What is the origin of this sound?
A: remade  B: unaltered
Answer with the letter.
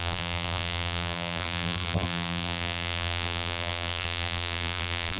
A